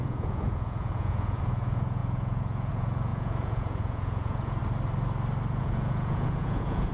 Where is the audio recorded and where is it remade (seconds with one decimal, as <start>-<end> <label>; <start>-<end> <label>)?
0.0-4.6 remade; 4.6-5.6 recorded; 5.6-6.9 remade